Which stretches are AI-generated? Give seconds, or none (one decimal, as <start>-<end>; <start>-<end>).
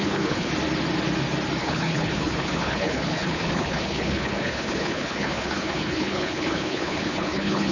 0.0-0.5; 1.6-7.7